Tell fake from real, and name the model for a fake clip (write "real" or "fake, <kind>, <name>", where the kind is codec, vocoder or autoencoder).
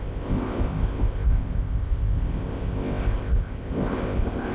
fake, codec, ZipCodec